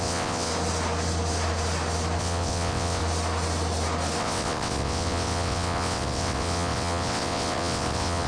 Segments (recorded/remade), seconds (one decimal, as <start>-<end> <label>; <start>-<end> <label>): 0.0-0.5 remade; 0.5-2.2 recorded; 2.2-3.0 remade; 3.0-4.2 recorded; 4.2-8.3 remade